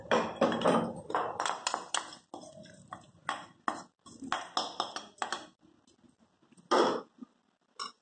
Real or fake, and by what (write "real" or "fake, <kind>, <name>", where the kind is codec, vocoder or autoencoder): real